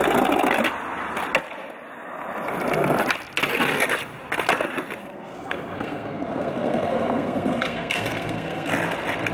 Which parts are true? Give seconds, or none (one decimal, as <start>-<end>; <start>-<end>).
0.0-5.0; 8.7-9.3